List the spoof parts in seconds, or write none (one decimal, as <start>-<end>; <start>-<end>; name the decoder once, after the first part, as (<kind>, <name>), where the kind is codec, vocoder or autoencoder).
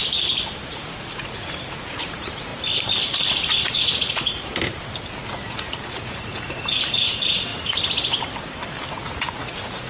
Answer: 0.7-2.5 (vocoder, Vocos); 3.6-4.5; 5.3-7.5; 8.9-9.9